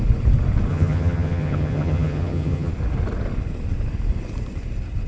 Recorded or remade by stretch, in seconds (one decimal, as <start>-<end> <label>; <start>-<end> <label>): 0.0-0.7 recorded; 0.7-2.7 remade; 2.7-5.1 recorded